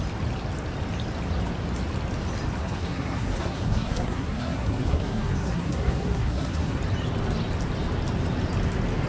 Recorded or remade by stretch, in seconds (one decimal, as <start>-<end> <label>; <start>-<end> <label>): 0.0-2.6 recorded; 2.6-6.8 remade; 6.8-9.1 recorded

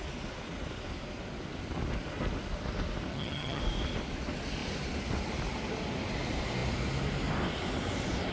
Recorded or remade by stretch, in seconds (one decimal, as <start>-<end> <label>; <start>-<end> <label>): 0.0-3.1 recorded; 3.1-3.6 remade; 3.6-8.3 recorded

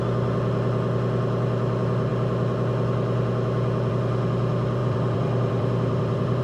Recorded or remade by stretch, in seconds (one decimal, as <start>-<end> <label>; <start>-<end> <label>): 0.0-4.8 recorded; 4.8-6.4 remade

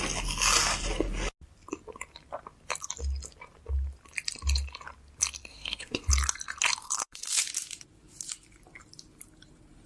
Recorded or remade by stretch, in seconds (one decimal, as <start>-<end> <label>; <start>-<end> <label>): 0.0-5.5 recorded; 5.5-6.1 remade; 6.1-6.8 recorded; 6.8-7.4 remade; 7.4-9.9 recorded